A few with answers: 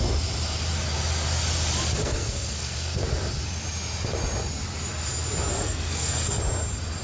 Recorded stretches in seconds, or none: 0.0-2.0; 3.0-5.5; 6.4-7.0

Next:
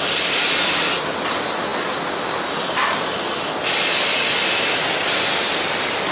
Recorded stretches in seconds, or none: 0.0-6.1